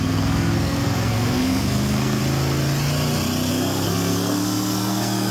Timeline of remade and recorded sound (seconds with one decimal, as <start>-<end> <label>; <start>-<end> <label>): 0.0-2.2 remade; 2.2-3.5 recorded; 3.5-5.3 remade

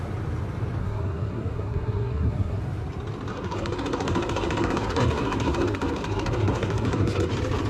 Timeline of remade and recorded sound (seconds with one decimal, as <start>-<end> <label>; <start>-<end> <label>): 0.0-0.8 recorded; 0.8-2.6 remade; 2.6-3.3 recorded; 3.3-7.3 remade; 7.3-7.7 recorded